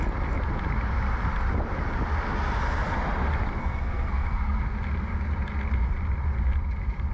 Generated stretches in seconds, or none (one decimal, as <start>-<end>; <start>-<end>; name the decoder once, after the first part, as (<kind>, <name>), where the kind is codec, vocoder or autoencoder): 3.6-4.6 (codec, SNAC)